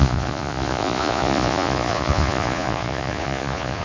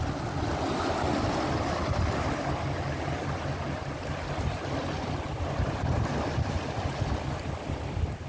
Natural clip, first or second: second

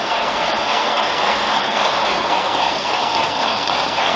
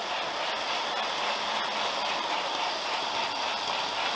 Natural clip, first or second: second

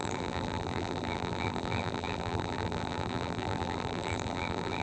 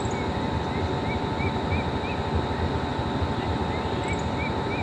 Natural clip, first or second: second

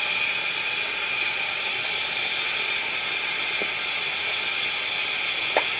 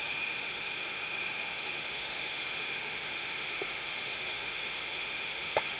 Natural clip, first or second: first